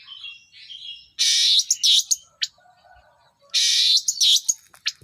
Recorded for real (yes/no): yes